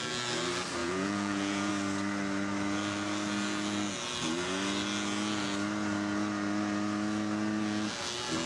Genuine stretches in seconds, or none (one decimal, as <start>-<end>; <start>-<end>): 0.0-0.8; 1.7-8.5